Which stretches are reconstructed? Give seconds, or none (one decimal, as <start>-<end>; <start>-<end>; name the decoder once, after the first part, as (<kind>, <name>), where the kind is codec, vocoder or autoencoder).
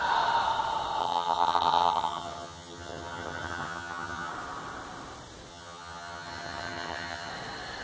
1.0-4.3 (vocoder, HiFi-GAN); 5.5-7.3